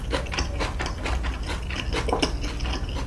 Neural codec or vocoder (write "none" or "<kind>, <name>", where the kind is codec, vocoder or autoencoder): none